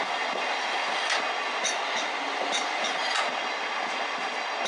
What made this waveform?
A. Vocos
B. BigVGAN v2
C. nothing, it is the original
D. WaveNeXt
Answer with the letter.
C